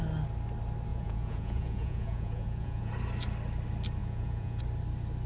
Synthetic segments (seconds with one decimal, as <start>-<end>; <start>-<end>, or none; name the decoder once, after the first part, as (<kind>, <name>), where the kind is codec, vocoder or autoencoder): 0.9-2.9 (vocoder, Vocos); 4.0-4.6